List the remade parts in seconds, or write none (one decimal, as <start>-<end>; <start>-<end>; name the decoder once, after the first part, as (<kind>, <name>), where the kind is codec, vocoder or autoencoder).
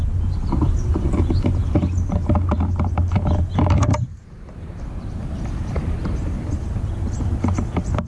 4.1-7.4 (vocoder, BigVGAN v2)